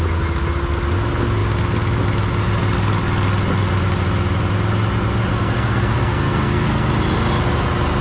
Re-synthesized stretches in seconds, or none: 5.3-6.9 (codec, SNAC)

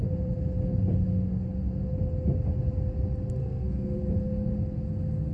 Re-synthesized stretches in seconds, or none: 3.4-4.0 (codec, SNAC)

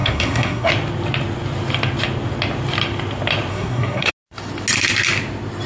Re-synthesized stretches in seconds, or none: 0.0-0.7 (codec, SNAC); 3.5-4.1

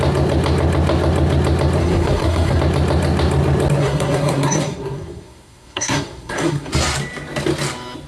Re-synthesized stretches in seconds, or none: 1.8-2.6 (codec, SNAC); 3.8-6.7

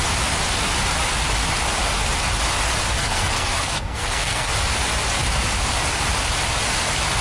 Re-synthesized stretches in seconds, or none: 3.0-4.5 (codec, SNAC)

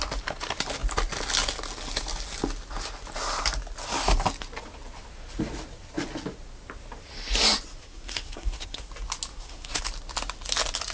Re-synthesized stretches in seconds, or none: 7.8-8.9 (codec, SNAC); 9.3-9.8

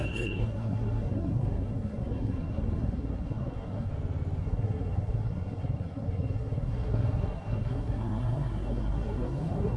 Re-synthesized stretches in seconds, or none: 0.0-3.9 (codec, SNAC); 4.4-9.8

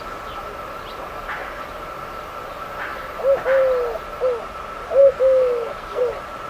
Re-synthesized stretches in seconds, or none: 5.0-6.0 (codec, SNAC)